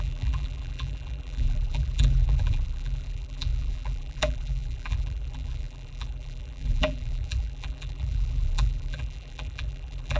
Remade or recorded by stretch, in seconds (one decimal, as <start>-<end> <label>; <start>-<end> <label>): 0.0-10.2 remade